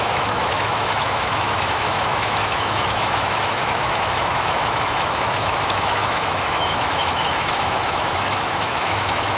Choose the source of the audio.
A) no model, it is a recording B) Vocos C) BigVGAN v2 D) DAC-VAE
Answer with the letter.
D